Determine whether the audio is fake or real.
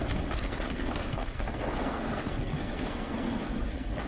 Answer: fake